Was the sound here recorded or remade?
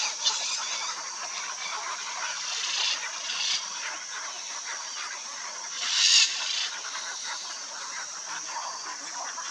recorded